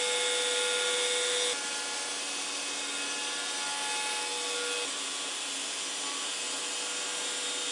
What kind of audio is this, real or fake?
real